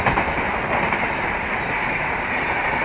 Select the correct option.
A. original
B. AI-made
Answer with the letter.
A